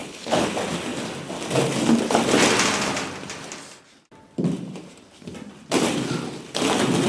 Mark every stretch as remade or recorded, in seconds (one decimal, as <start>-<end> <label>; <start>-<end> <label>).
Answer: 0.0-0.5 remade; 0.5-7.1 recorded